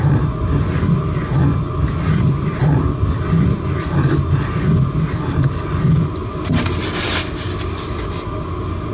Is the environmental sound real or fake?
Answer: real